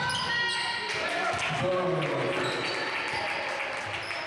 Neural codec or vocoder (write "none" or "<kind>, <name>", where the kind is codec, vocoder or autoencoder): none